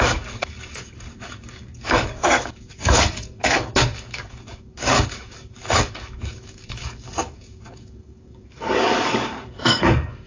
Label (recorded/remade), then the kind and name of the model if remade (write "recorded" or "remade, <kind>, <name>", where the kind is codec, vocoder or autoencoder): remade, codec, DAC